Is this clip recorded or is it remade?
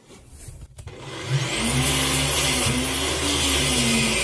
recorded